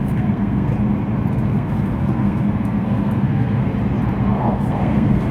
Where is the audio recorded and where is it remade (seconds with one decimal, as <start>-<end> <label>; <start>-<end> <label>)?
0.0-0.7 remade; 0.7-1.3 recorded; 1.3-3.7 remade; 3.7-4.2 recorded; 4.2-5.3 remade